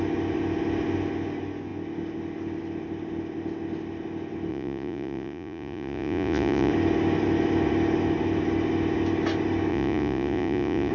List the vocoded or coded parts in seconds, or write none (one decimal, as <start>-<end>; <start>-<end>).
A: 4.5-6.7; 9.7-10.9